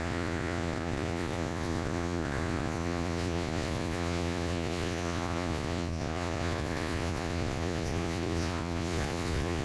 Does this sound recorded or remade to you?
remade